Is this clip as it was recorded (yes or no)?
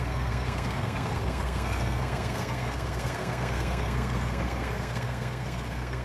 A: no